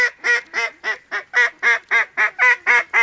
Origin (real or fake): real